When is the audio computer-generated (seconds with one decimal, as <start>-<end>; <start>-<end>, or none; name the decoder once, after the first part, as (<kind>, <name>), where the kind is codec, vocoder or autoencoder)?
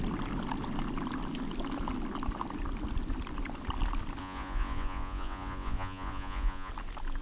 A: 4.2-6.7 (vocoder, Vocos)